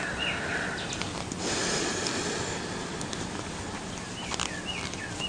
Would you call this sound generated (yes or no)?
no